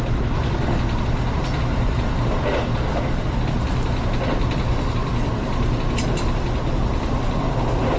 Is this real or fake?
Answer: real